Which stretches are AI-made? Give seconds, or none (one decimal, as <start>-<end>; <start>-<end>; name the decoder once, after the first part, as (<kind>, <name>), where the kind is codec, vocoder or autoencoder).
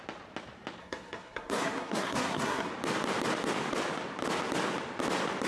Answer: 0.8-2.7 (codec, SNAC)